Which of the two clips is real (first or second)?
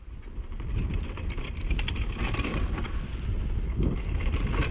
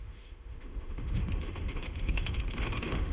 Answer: first